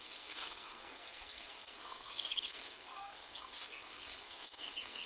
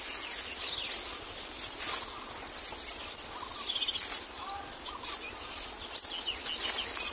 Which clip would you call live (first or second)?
second